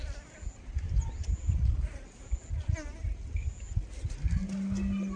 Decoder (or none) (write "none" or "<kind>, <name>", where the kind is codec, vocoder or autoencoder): none